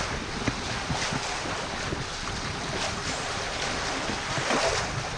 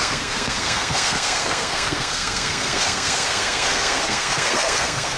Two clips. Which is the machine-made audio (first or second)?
second